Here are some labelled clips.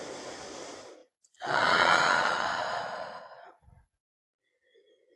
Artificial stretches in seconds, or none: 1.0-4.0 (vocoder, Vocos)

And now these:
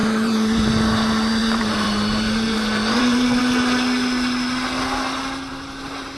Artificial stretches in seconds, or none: 0.0-0.7 (vocoder, BigVGAN v2); 1.4-3.4; 5.5-6.2

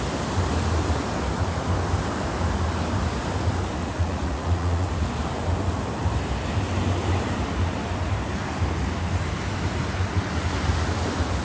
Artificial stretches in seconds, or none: 3.8-4.9 (vocoder, Vocos)

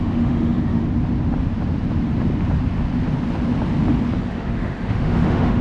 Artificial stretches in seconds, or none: 0.0-0.8 (autoencoder, DAC-VAE); 4.2-5.6

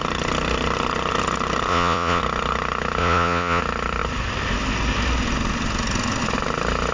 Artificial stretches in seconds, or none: 1.7-2.2 (vocoder, Vocos); 3.0-3.6

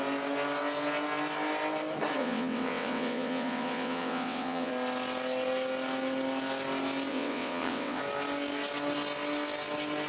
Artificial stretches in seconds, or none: 2.2-4.7 (vocoder, WaveNeXt); 7.1-8.0

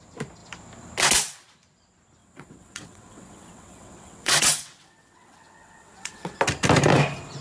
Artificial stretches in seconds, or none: 2.2-6.4 (vocoder, WaveNeXt)